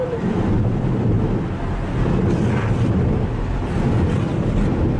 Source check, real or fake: real